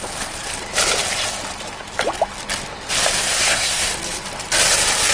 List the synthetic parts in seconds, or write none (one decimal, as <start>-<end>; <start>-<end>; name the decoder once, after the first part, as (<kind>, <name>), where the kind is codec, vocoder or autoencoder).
3.2-3.9 (codec, SNAC)